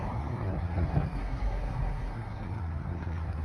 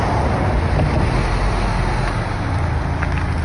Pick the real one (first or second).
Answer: second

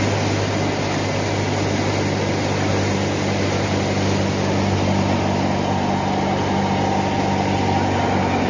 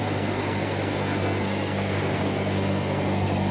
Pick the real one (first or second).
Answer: first